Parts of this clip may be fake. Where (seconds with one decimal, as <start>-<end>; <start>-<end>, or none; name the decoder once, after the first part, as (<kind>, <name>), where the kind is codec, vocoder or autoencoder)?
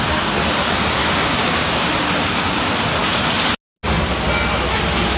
1.0-1.9 (codec, DAC)